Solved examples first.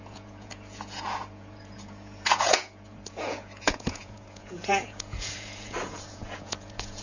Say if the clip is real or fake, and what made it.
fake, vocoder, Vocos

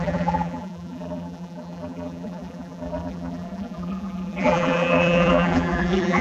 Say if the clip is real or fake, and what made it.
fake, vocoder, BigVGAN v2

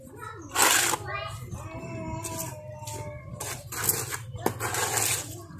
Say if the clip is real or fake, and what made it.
real